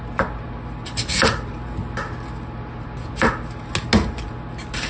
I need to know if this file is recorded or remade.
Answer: recorded